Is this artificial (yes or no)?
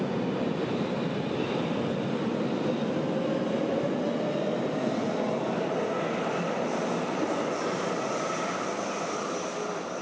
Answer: no